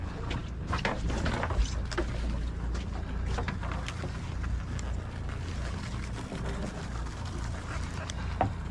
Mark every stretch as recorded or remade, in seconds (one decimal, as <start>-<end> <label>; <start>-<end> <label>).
0.0-8.7 recorded